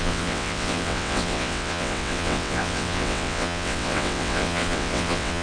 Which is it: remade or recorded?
remade